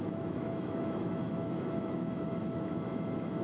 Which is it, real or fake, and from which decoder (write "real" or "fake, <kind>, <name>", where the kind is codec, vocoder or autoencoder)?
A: fake, autoencoder, DAC-VAE